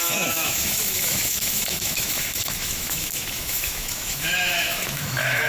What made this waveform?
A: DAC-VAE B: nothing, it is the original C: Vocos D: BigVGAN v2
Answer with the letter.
A